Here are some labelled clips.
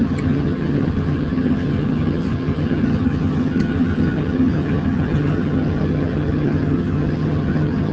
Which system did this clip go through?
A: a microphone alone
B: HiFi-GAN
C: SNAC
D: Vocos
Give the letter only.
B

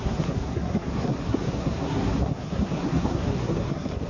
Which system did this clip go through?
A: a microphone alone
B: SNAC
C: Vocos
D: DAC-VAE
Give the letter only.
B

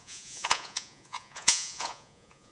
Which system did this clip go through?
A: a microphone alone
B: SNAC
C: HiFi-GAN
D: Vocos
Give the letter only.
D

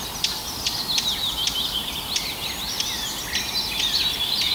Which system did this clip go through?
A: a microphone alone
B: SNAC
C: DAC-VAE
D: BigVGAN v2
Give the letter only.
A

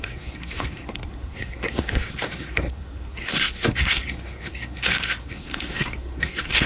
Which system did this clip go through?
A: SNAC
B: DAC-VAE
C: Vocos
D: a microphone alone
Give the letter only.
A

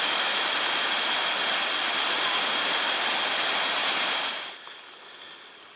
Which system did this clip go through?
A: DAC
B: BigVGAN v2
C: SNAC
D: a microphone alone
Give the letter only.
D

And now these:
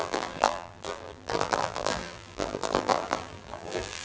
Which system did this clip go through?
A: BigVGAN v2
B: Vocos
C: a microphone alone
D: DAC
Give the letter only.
A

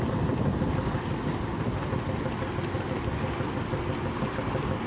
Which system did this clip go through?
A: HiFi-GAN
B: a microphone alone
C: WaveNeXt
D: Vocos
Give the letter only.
B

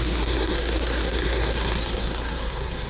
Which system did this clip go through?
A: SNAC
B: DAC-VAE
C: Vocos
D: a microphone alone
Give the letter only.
A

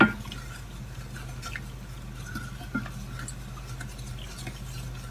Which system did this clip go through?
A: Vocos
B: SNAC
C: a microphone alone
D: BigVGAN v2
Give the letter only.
C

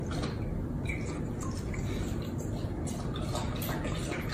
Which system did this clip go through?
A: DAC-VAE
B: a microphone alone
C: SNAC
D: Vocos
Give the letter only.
B